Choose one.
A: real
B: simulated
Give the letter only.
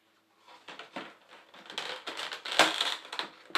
A